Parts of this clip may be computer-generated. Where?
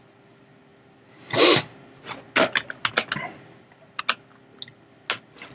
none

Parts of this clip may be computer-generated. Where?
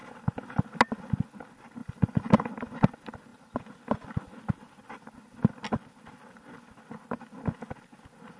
1.8-2.5 (vocoder, BigVGAN v2)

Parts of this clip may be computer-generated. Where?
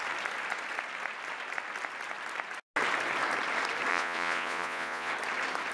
3.9-5.1 (vocoder, Vocos)